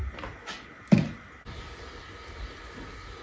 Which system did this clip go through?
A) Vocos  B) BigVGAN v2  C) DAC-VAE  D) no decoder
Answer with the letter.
D